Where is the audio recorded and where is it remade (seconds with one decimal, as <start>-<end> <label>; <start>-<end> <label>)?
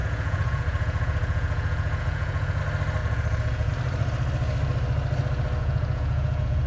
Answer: 0.0-2.6 remade; 2.6-3.0 recorded; 3.0-3.7 remade; 3.7-5.6 recorded; 5.6-6.7 remade